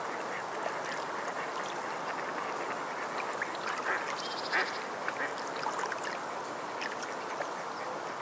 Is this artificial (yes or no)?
no